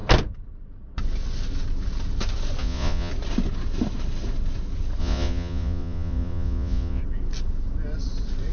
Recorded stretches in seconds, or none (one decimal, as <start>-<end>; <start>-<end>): 0.0-2.6; 3.1-5.0; 7.0-8.5

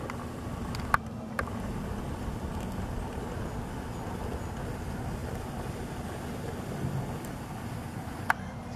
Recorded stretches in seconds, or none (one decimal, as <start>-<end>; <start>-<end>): 0.0-8.8

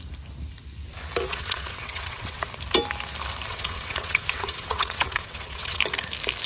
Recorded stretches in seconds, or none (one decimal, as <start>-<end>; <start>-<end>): 0.0-1.3; 2.4-3.5; 5.8-6.5

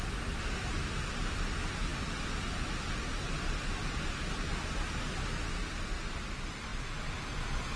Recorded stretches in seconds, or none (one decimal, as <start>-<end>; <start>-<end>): 0.0-7.8